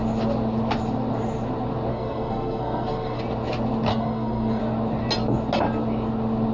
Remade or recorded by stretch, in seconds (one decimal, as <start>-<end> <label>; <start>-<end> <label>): 0.0-1.9 recorded; 1.9-3.2 remade; 3.2-3.9 recorded; 3.9-4.6 remade; 4.6-6.5 recorded